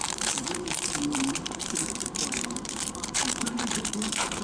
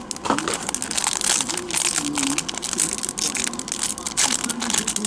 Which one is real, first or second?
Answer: second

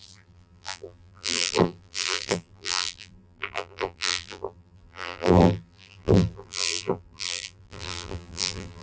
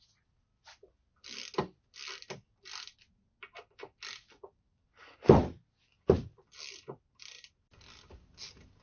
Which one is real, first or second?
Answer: second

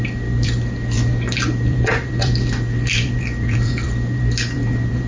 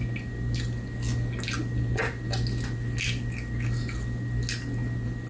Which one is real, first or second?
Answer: second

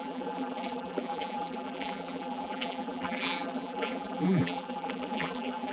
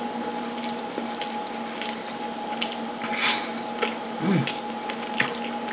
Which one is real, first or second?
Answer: second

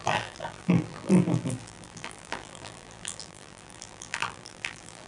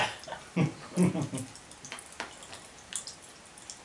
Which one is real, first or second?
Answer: second